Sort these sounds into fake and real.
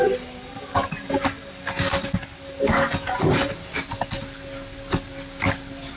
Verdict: real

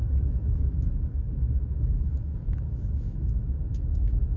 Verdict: fake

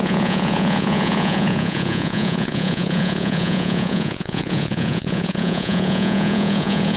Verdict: fake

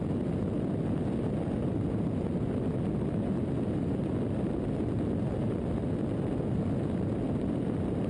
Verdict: real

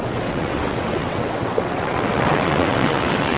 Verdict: fake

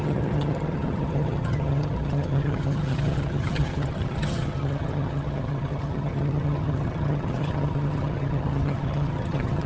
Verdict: fake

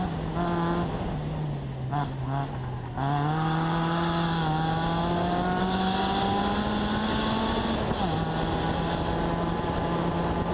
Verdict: real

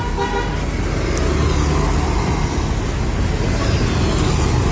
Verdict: real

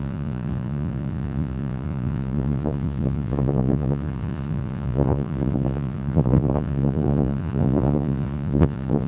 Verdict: fake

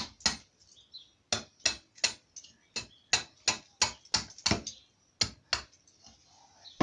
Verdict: real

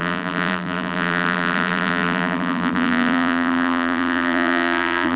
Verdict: fake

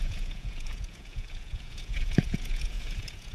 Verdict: fake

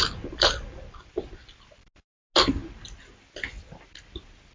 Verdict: real